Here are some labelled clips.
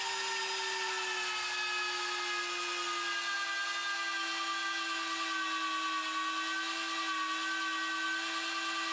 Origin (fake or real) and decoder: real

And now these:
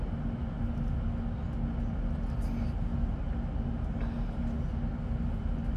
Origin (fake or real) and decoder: real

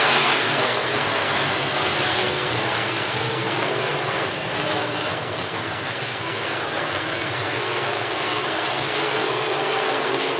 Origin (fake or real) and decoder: fake, codec, SNAC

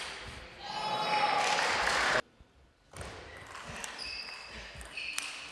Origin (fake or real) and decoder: real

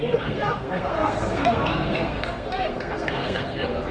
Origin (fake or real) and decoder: fake, codec, SNAC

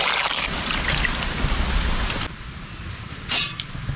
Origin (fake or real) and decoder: real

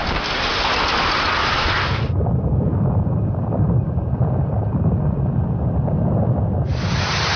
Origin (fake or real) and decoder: real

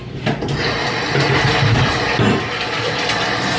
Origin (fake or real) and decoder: real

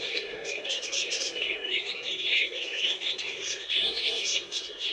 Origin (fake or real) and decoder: fake, codec, SNAC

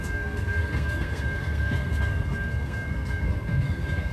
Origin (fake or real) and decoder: fake, codec, SNAC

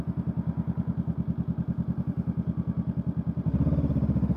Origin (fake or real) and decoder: real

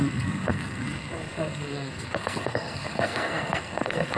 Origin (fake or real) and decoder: fake, codec, SNAC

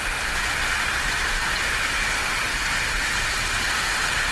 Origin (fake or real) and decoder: real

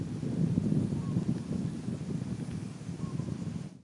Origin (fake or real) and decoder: real